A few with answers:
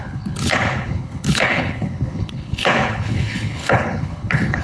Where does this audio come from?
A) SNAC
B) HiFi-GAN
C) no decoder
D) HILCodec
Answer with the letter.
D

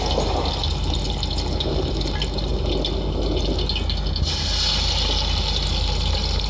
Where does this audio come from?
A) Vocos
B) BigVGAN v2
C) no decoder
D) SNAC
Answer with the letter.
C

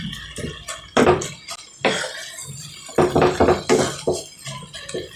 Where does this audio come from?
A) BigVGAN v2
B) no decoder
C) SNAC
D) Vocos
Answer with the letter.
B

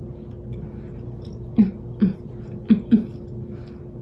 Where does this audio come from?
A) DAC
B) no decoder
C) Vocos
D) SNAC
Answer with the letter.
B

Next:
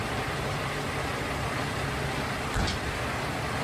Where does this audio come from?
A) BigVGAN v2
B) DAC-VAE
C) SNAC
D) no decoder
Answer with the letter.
D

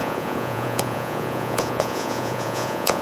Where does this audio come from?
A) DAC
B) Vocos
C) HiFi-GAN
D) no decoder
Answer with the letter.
B